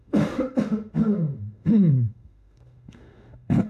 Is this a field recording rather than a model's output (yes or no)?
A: no